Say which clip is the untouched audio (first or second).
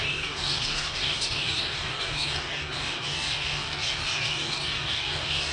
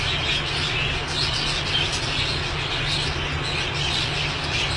second